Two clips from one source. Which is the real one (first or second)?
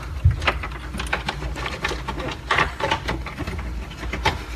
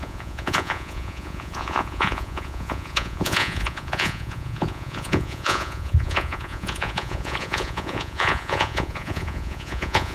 first